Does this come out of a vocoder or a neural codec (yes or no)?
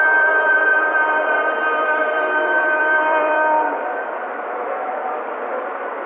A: yes